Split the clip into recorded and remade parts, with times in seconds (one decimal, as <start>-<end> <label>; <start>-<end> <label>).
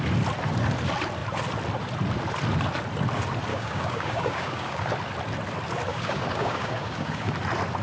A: 0.0-3.5 recorded; 3.5-4.9 remade; 4.9-5.9 recorded; 5.9-7.3 remade; 7.3-7.8 recorded